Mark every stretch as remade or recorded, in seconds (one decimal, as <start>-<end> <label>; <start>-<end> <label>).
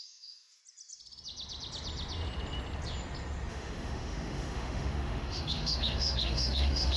0.0-0.6 remade; 0.6-3.5 recorded; 3.5-7.0 remade